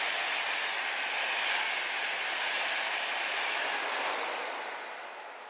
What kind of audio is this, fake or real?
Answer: real